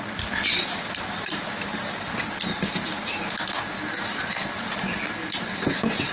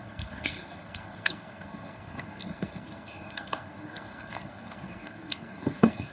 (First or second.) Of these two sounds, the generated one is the second